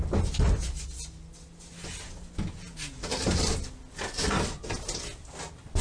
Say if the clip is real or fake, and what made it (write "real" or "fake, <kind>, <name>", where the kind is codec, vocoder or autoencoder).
real